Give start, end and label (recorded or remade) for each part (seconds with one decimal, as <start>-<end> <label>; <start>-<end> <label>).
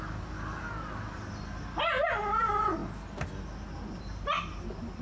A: 0.0-5.0 recorded